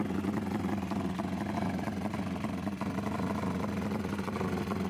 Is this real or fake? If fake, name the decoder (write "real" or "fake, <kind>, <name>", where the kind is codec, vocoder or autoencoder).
real